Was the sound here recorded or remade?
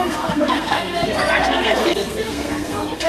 remade